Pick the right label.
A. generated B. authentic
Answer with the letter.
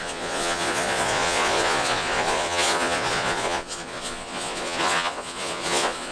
A